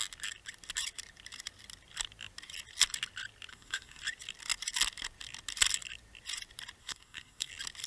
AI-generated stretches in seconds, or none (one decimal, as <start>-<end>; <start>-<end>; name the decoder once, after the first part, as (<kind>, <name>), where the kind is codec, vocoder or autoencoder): 3.5-4.0 (codec, SNAC); 6.8-7.5